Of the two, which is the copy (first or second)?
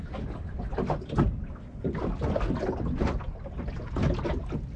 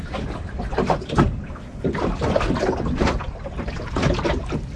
second